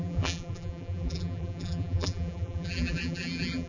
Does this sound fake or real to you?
fake